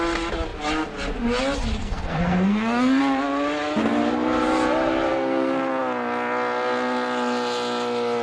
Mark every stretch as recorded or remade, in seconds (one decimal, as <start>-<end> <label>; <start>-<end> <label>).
0.0-1.8 recorded; 1.8-3.0 remade; 3.0-5.1 recorded; 5.1-5.8 remade; 5.8-8.2 recorded